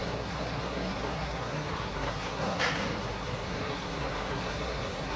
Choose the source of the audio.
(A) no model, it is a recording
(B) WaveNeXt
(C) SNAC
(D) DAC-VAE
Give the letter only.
C